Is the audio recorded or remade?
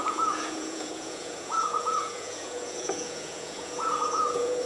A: remade